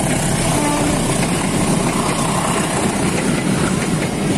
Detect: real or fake real